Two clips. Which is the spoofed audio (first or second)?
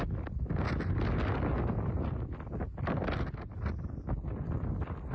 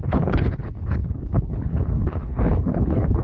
second